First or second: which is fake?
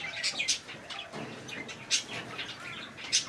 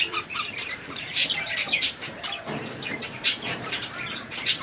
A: second